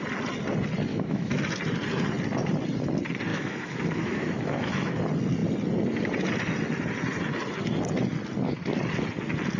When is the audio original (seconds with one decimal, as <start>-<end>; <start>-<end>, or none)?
0.0-0.9; 1.4-3.3; 4.9-9.6